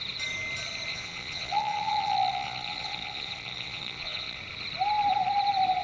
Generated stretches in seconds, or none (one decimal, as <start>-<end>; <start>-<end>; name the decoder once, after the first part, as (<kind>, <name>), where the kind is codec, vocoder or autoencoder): 0.9-4.4 (vocoder, Vocos)